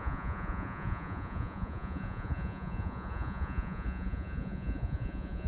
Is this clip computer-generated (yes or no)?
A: yes